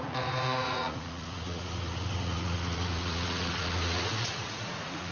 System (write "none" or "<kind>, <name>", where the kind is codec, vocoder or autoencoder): vocoder, Vocos